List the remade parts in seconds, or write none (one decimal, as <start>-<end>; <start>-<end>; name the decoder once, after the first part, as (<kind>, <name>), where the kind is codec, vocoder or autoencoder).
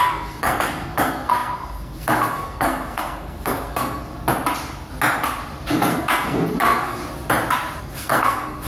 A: 0.0-4.1 (codec, SNAC); 5.7-7.0; 7.8-8.7